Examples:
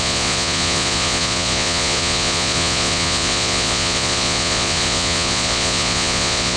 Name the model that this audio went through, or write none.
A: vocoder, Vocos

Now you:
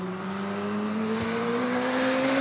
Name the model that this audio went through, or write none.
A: vocoder, BigVGAN v2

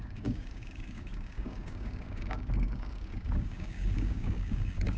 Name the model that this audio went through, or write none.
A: codec, DAC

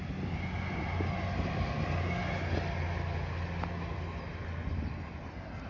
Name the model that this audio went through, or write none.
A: none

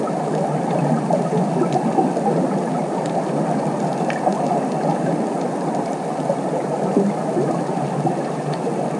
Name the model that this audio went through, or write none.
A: none